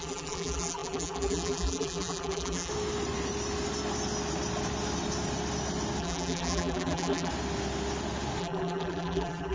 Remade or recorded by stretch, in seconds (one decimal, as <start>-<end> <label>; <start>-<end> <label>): 0.0-2.7 remade; 2.7-6.0 recorded; 6.0-7.3 remade; 7.3-8.4 recorded; 8.4-9.5 remade